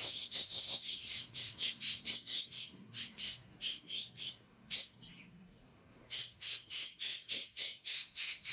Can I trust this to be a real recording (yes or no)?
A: no